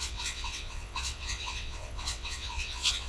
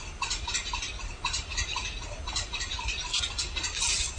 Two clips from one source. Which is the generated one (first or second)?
first